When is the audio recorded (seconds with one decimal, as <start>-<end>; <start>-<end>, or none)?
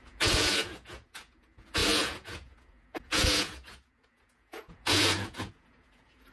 none